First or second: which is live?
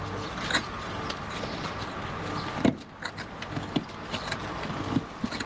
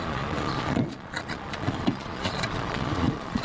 first